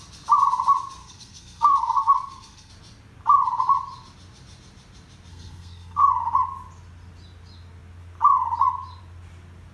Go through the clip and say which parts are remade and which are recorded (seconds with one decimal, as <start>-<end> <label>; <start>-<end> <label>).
0.0-1.0 recorded; 1.0-2.7 remade; 2.7-5.3 recorded; 5.3-6.0 remade; 6.0-9.7 recorded